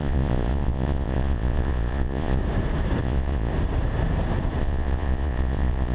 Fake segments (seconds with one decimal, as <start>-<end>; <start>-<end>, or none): 0.0-2.4; 3.0-3.5; 4.6-5.9